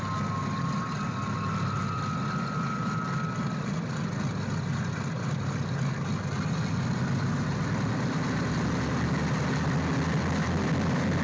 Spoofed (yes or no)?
no